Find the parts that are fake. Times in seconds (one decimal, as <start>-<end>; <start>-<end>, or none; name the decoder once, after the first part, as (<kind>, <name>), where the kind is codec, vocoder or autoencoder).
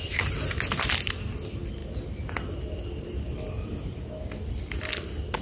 none